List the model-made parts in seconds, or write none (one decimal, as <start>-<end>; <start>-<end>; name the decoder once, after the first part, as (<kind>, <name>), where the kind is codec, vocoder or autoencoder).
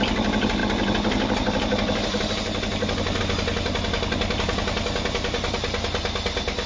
none